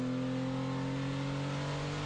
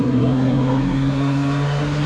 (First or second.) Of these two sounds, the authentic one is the first